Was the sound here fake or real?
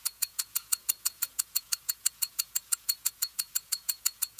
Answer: fake